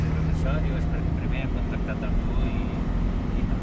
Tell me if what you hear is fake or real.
real